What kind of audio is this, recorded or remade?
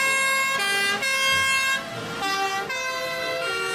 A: recorded